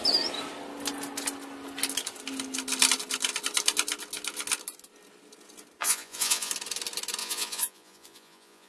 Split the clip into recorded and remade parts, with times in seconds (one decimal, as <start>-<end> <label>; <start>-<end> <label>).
0.0-5.8 recorded; 5.8-6.5 remade; 6.5-7.2 recorded; 7.2-8.7 remade